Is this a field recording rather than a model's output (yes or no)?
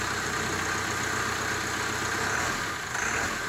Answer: yes